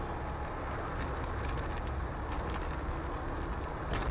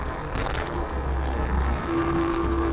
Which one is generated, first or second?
second